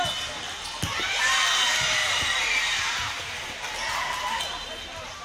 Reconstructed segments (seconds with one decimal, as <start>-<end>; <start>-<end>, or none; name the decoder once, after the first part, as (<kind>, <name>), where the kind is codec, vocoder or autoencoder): 2.0-4.4 (vocoder, BigVGAN v2)

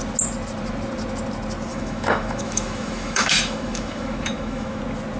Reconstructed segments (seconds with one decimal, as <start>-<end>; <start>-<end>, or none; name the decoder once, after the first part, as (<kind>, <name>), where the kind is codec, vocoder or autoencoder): 1.7-4.8 (autoencoder, DAC-VAE)

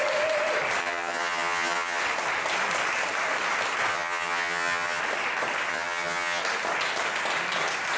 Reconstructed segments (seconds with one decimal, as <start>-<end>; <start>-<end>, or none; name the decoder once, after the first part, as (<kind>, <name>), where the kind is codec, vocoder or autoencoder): 0.8-2.0 (vocoder, HiFi-GAN); 3.9-5.0; 5.7-6.4

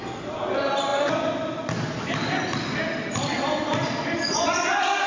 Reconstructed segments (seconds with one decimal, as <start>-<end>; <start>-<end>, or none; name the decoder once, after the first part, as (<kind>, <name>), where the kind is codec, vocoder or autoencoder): none

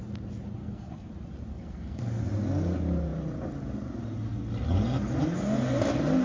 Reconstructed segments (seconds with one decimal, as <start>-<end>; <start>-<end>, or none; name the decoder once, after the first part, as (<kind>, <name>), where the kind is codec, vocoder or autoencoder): 0.6-1.1 (codec, SNAC); 1.5-2.2